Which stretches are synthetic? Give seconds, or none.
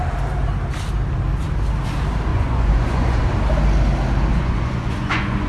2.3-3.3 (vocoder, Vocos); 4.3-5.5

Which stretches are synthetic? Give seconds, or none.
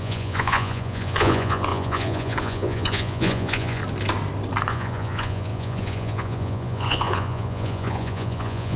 0.0-3.8 (vocoder, Vocos); 4.7-8.8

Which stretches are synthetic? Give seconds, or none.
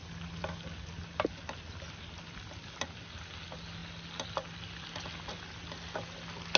none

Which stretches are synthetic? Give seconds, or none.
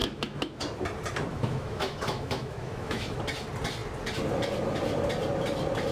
0.0-0.6 (autoencoder, DAC-VAE); 1.3-3.2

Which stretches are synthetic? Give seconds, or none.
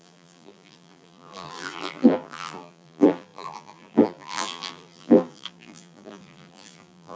0.0-7.2 (vocoder, BigVGAN v2)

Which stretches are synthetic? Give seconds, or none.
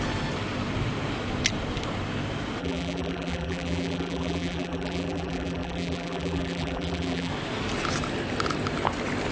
2.6-7.3 (vocoder, BigVGAN v2)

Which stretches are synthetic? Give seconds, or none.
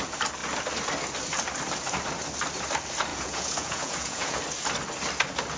3.1-4.4 (vocoder, Vocos)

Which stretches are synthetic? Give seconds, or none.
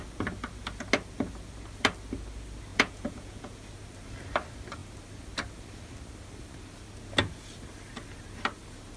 2.7-3.7 (vocoder, Vocos)